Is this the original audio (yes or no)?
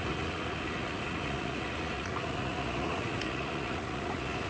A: no